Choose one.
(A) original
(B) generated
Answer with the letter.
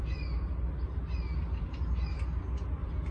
A